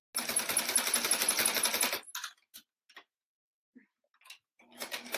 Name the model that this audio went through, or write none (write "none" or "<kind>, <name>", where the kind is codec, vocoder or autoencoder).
none